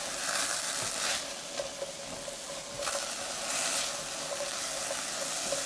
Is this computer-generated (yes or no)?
no